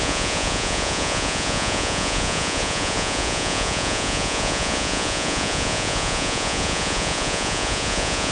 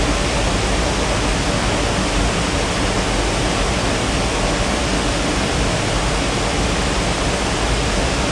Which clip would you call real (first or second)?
second